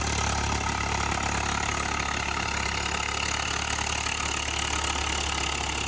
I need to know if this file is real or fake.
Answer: real